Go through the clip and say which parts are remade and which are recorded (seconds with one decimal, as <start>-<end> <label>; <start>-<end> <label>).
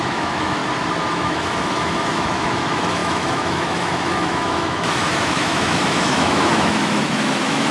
0.0-0.6 remade; 0.6-1.1 recorded; 1.1-7.7 remade